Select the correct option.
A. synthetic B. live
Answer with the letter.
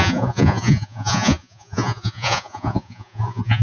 A